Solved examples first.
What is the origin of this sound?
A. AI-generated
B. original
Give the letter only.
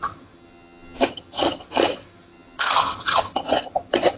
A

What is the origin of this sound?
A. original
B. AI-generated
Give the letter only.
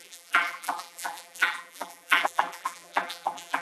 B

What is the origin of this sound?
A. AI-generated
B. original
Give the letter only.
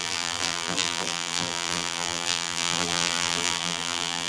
A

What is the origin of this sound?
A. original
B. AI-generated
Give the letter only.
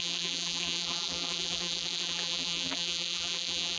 B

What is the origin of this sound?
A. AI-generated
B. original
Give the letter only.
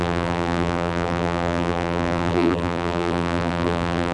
A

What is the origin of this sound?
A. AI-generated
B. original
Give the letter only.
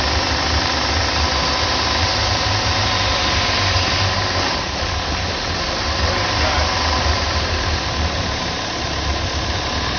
A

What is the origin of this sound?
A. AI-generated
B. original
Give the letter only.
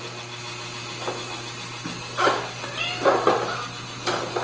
B